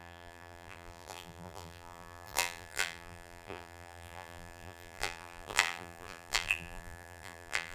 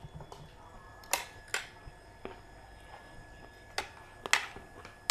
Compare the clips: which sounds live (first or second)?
second